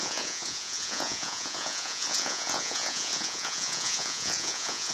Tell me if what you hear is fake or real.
fake